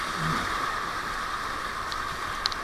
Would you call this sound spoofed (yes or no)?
no